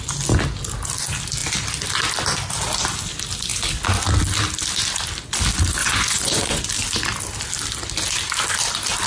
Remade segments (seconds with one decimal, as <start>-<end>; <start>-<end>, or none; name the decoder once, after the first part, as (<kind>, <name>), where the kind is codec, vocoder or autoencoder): 5.8-6.6 (vocoder, Vocos)